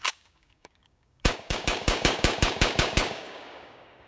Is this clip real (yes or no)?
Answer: no